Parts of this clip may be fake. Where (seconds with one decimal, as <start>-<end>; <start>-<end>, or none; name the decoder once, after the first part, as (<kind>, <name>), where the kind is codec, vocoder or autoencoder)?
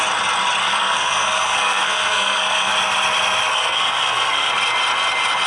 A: 0.6-2.7 (codec, SNAC); 3.5-4.5